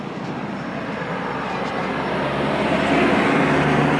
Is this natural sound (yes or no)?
yes